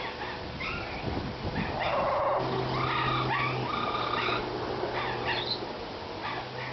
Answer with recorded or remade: recorded